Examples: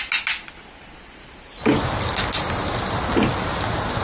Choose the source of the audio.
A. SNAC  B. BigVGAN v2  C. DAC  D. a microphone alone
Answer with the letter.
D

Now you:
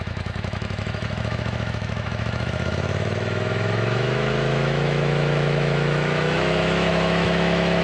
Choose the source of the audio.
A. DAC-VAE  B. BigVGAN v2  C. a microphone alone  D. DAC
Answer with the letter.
A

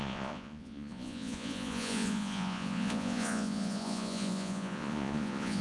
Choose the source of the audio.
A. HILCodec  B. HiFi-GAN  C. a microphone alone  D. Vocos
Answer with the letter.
D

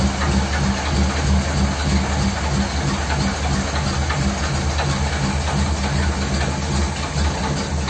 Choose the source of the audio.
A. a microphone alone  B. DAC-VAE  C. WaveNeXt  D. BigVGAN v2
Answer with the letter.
A